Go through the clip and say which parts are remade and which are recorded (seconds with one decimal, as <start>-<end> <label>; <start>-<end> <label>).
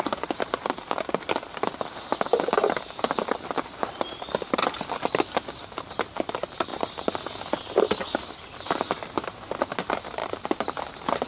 0.0-10.2 recorded; 10.2-10.9 remade; 10.9-11.3 recorded